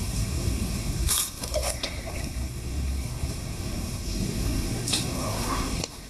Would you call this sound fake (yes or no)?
yes